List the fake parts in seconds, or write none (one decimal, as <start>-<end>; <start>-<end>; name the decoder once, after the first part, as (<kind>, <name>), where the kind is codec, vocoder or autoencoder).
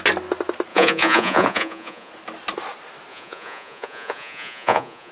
0.7-2.1 (vocoder, Vocos); 3.1-5.1